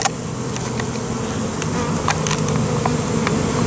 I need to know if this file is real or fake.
real